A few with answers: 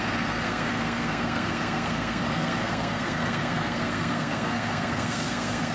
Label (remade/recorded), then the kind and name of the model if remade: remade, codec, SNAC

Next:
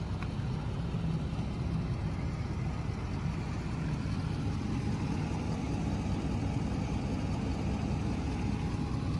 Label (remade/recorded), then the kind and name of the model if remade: recorded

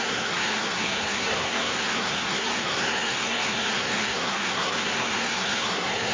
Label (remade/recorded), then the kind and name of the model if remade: remade, codec, SNAC